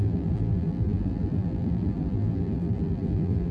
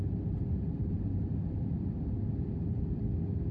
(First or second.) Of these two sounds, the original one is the second